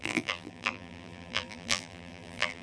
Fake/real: fake